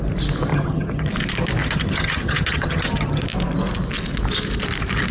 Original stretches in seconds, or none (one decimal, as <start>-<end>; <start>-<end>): 0.0-0.5; 1.1-1.6; 3.2-5.1